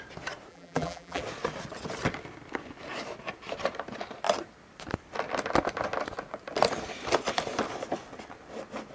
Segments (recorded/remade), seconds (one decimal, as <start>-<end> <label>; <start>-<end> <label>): 0.0-0.5 recorded; 0.5-1.2 remade; 1.2-8.9 recorded